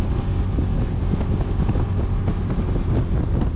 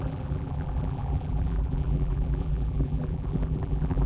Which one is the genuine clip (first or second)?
first